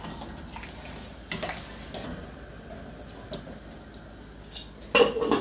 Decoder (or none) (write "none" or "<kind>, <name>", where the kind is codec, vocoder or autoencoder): none